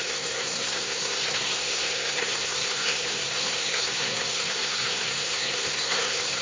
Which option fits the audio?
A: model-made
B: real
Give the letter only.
A